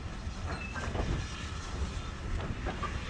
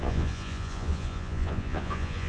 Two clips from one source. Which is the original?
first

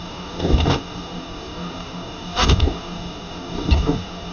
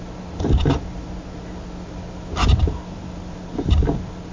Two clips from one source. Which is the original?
second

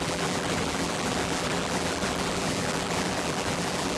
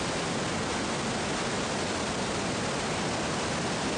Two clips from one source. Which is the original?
second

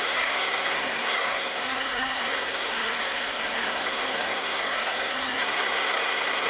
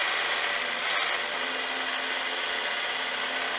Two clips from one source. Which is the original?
second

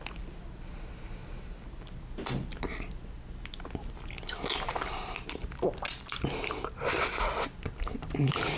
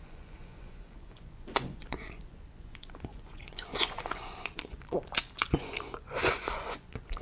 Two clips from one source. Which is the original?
first